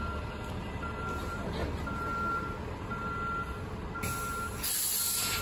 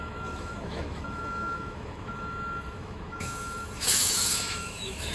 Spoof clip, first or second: second